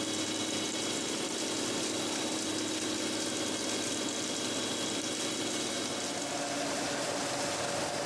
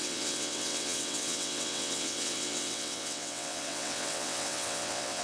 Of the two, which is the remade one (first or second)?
second